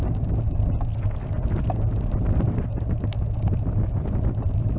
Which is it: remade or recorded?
recorded